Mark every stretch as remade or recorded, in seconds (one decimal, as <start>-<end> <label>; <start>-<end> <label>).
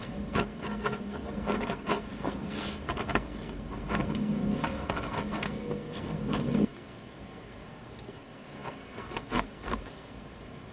0.0-10.7 remade